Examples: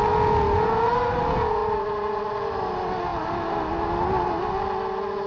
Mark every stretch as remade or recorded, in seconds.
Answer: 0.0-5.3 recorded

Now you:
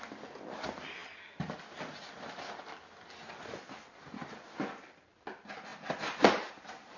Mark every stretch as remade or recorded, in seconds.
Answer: 0.0-7.0 recorded

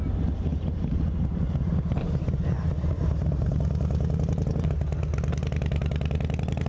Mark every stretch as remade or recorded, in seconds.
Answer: 0.0-0.5 recorded; 0.5-3.6 remade; 3.6-6.7 recorded

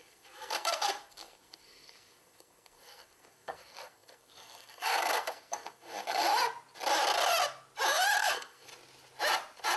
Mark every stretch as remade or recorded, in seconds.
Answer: 0.0-6.3 remade; 6.3-8.2 recorded; 8.2-8.7 remade; 8.7-9.8 recorded